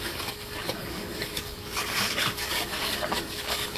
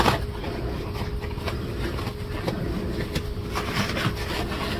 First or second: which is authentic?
second